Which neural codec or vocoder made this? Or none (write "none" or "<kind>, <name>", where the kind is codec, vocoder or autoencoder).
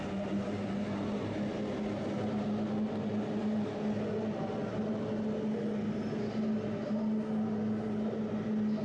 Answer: none